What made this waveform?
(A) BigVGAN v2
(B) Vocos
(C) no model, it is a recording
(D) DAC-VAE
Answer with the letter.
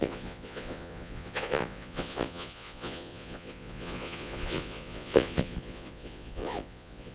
B